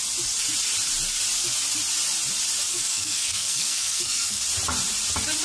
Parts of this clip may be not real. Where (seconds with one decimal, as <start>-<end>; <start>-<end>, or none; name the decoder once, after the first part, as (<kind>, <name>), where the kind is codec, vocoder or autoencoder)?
2.7-4.4 (codec, SNAC)

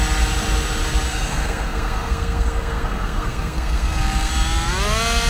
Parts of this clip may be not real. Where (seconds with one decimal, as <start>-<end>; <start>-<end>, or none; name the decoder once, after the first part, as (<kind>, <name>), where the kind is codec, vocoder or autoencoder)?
1.1-4.3 (codec, SNAC)

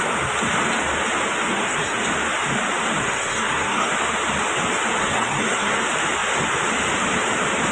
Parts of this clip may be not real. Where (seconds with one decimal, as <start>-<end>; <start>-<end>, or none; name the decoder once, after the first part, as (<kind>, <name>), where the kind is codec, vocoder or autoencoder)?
1.5-2.0 (codec, SNAC); 3.0-3.9; 5.0-5.8

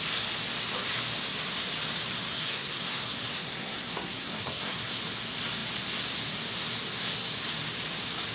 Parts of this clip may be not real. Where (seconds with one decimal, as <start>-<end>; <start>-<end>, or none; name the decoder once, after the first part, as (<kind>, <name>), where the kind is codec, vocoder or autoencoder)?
2.3-5.0 (codec, SNAC)

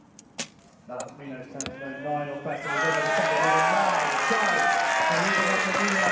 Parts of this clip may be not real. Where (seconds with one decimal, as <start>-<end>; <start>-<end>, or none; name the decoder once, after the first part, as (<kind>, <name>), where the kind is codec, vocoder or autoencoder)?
0.7-1.2 (codec, SNAC)